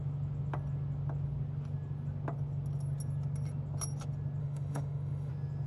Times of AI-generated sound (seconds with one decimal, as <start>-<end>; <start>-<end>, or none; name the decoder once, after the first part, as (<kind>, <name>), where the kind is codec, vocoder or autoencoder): 4.4-5.3 (autoencoder, DAC-VAE)